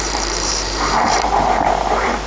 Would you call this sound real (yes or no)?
no